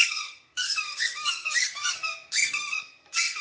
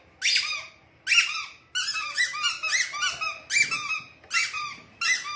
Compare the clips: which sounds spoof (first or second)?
first